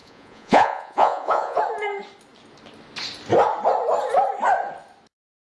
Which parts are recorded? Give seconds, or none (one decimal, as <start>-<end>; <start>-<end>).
1.6-5.6